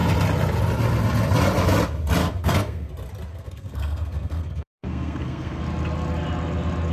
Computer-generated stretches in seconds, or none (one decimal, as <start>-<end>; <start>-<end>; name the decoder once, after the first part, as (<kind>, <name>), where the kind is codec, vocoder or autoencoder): 2.2-2.9 (codec, SNAC); 3.3-5.6